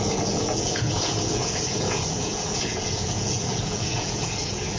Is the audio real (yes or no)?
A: no